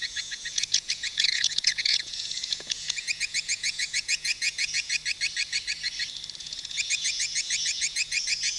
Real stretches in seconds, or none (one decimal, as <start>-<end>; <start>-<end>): 4.9-6.4